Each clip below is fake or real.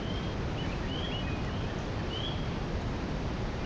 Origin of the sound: real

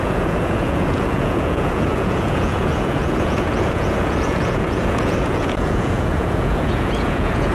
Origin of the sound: fake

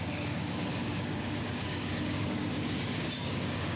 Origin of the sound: fake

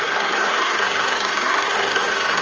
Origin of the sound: fake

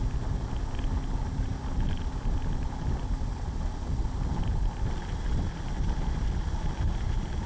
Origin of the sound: real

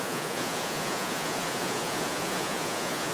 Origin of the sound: fake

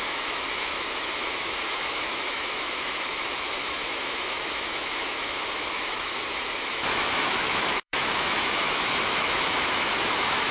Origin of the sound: fake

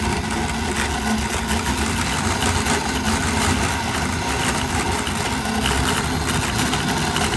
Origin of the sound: real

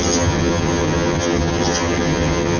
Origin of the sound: fake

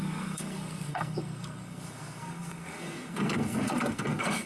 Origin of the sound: fake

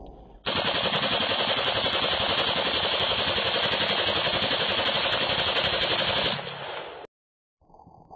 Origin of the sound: real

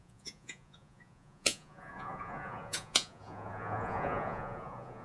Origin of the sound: fake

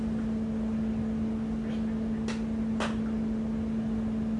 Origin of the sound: real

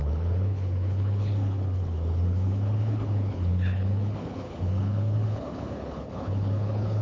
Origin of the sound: fake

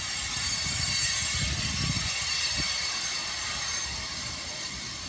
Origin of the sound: real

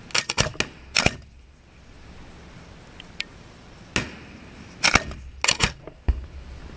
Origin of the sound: real